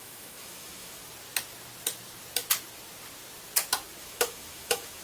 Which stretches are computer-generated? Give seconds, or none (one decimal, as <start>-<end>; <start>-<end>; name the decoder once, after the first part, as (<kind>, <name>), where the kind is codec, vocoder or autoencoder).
0.0-1.0 (autoencoder, DAC-VAE); 4.0-5.0